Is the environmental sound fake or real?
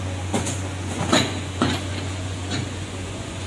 fake